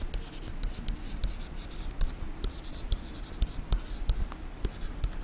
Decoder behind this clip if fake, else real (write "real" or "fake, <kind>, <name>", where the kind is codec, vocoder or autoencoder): real